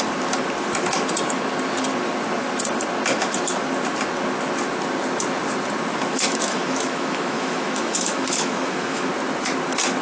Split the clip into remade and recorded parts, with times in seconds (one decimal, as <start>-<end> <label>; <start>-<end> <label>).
0.0-6.1 recorded; 6.1-9.1 remade; 9.1-10.0 recorded